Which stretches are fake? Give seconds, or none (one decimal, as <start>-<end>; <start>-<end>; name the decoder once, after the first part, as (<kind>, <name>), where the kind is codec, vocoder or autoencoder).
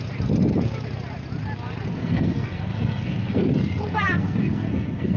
1.9-5.2 (codec, SNAC)